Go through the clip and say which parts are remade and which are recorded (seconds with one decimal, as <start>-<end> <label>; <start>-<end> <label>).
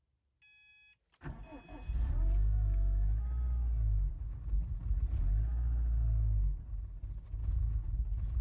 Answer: 0.0-7.4 recorded; 7.4-8.4 remade